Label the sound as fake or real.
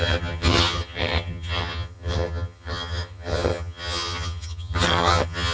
fake